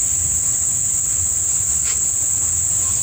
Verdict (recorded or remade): recorded